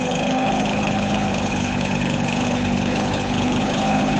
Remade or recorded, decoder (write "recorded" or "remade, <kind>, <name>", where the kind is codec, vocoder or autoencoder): remade, codec, HILCodec